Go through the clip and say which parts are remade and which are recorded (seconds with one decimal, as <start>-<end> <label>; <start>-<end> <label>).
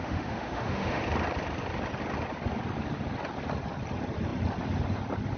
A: 0.0-1.0 remade; 1.0-5.4 recorded